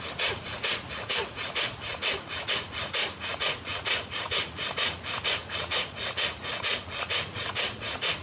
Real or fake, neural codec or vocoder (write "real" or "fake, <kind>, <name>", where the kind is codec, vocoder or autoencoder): fake, vocoder, Vocos